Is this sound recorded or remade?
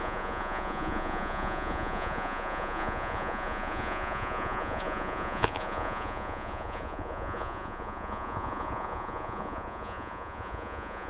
remade